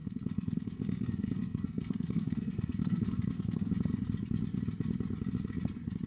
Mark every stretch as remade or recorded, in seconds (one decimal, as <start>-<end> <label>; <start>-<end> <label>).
0.0-3.7 remade; 3.7-6.1 recorded

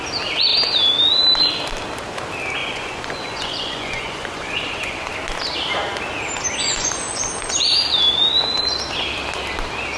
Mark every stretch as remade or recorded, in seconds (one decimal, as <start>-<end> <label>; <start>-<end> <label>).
0.0-2.6 recorded; 2.6-5.1 remade; 5.1-6.6 recorded; 6.6-7.2 remade; 7.2-10.0 recorded

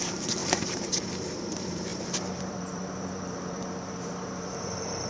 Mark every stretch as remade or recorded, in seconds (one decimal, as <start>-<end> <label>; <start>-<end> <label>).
0.0-5.1 remade

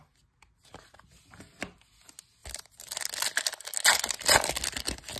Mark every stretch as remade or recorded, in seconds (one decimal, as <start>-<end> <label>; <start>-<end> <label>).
0.0-5.2 recorded

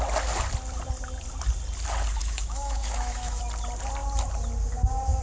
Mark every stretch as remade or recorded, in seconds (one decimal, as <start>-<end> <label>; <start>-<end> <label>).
0.0-2.2 recorded; 2.2-3.4 remade; 3.4-5.2 recorded

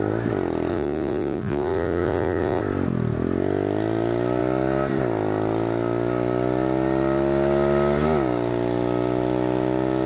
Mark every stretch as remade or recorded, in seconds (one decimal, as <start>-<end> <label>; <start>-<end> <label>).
0.0-0.7 recorded; 0.7-2.6 remade; 2.6-10.1 recorded